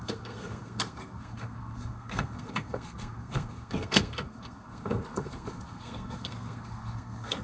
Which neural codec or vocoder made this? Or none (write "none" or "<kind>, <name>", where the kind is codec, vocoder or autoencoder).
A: codec, SNAC